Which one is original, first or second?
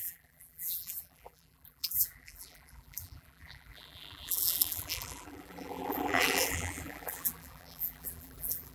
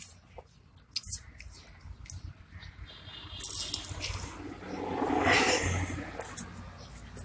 second